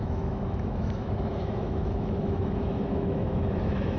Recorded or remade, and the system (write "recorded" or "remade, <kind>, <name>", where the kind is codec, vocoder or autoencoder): remade, autoencoder, DAC-VAE